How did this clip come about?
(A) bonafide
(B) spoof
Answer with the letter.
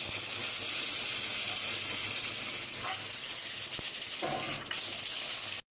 A